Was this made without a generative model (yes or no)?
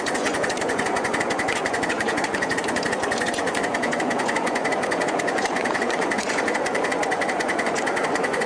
no